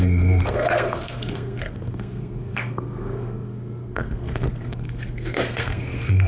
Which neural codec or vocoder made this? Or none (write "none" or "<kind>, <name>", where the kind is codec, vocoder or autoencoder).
codec, SNAC